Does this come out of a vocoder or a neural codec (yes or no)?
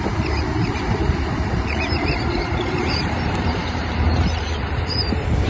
yes